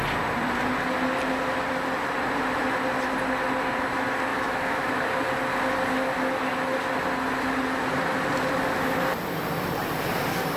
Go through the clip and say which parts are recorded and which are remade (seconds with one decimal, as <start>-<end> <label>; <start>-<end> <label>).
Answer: 0.0-4.3 recorded; 4.3-4.9 remade; 4.9-10.6 recorded